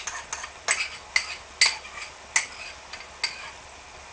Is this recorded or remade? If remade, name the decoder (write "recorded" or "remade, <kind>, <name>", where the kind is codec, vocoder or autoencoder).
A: recorded